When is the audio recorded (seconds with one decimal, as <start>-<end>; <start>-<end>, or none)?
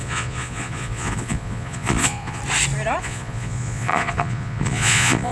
2.4-3.0